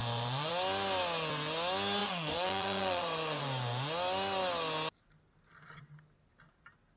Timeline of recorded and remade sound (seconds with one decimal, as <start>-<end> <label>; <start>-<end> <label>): 0.0-0.5 remade; 0.5-2.0 recorded; 2.0-3.4 remade; 3.4-7.0 recorded